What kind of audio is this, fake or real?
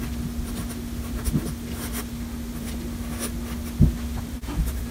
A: real